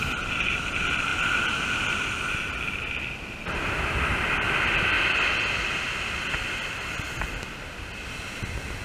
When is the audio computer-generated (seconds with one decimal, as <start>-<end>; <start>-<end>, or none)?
none